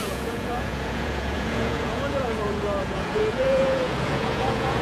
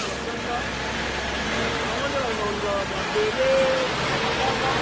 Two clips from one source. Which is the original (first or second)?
second